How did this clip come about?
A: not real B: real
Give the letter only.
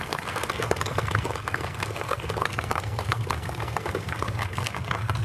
A